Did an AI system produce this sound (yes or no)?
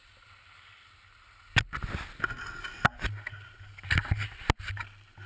no